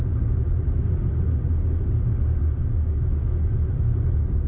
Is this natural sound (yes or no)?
yes